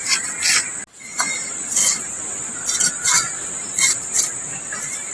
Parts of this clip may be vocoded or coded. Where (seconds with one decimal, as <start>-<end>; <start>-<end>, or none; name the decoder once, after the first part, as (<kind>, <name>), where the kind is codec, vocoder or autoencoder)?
none